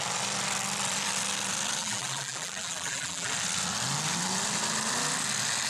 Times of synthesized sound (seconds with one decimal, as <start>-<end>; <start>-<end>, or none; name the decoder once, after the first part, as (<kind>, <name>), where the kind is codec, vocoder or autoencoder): 1.8-3.3 (vocoder, BigVGAN v2)